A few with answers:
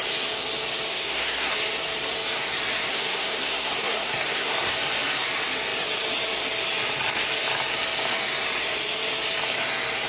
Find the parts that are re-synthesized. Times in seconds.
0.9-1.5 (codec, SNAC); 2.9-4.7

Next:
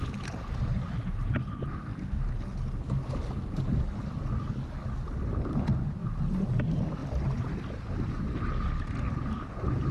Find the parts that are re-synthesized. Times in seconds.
none